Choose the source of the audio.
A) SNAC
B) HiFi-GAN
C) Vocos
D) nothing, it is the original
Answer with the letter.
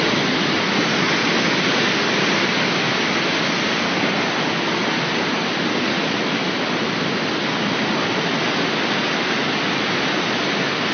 D